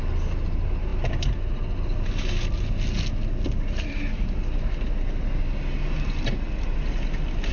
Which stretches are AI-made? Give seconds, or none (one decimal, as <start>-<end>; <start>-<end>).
none